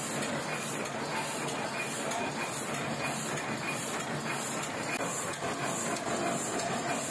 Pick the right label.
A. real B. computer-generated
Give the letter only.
A